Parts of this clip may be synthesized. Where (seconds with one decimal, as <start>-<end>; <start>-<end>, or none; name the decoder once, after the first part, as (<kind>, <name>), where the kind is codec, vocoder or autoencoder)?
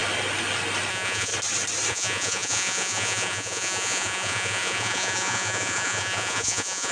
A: 0.9-1.3 (vocoder, Vocos); 1.9-6.9